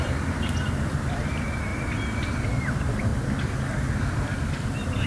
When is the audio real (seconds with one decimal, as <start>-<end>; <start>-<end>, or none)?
1.7-2.6; 3.1-3.7